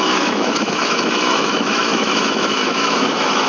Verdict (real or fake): fake